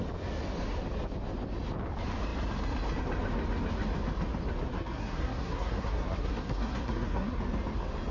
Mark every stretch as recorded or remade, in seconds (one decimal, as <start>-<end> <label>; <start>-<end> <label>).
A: 0.0-4.7 recorded; 4.7-7.4 remade; 7.4-8.1 recorded